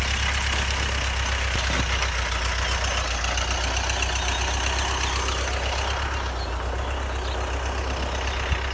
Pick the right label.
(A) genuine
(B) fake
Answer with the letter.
A